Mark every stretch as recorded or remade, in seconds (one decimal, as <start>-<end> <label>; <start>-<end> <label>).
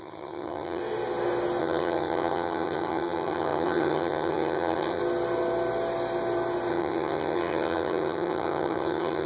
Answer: 0.0-0.8 remade; 0.8-1.6 recorded; 1.6-5.0 remade; 5.0-6.7 recorded; 6.7-9.3 remade